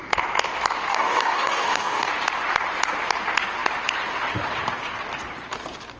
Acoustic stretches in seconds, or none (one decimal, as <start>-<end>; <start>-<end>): 0.0-0.9; 2.1-6.0